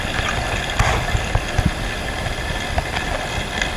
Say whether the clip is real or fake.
real